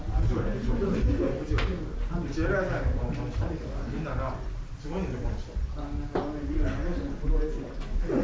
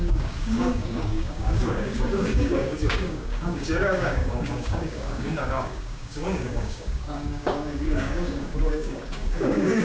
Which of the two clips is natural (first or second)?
first